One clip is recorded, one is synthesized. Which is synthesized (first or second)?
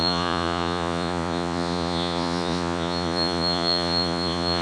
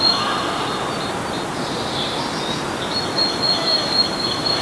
first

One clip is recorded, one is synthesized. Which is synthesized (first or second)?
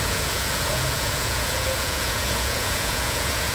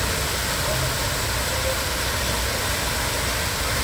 first